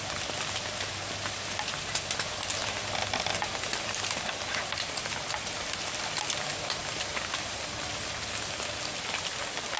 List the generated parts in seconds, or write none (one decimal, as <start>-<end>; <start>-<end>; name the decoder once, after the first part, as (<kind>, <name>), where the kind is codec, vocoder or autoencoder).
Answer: none